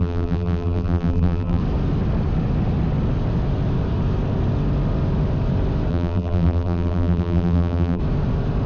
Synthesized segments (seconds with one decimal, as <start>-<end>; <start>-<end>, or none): 0.0-1.6; 5.9-8.0